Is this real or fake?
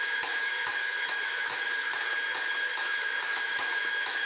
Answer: fake